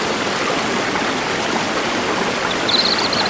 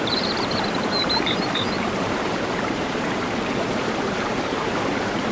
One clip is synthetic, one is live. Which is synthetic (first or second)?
second